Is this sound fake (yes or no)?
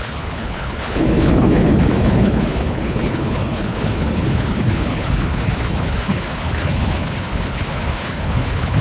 yes